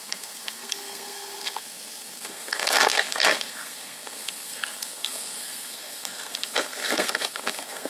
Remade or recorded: remade